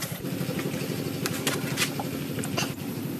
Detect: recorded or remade recorded